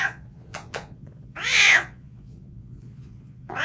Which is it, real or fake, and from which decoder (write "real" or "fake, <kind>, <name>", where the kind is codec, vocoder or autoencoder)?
fake, vocoder, Vocos